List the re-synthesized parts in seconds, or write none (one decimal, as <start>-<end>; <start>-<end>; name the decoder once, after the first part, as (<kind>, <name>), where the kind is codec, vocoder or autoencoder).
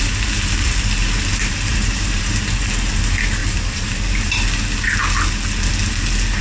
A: 1.3-2.7 (vocoder, BigVGAN v2); 3.4-4.3